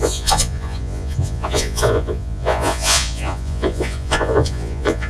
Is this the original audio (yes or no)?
no